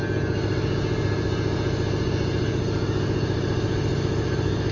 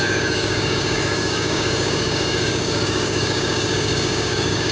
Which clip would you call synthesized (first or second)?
second